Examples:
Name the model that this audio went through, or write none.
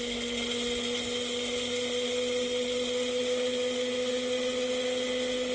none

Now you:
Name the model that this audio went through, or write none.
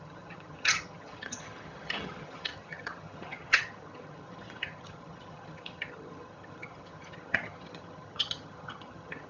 vocoder, HiFi-GAN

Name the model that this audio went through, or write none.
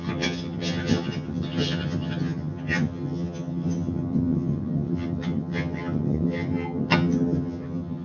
vocoder, HiFi-GAN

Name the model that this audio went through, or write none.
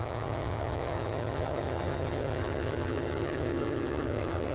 vocoder, HiFi-GAN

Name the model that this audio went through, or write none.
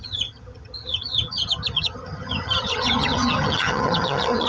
vocoder, HiFi-GAN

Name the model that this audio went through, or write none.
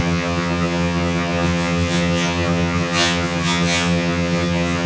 vocoder, HiFi-GAN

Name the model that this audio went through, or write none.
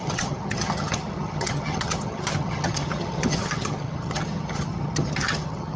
vocoder, HiFi-GAN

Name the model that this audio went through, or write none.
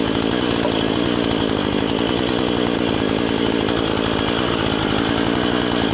none